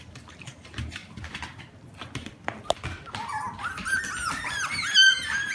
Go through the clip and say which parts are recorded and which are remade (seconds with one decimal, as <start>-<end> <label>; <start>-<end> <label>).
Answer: 0.0-5.5 recorded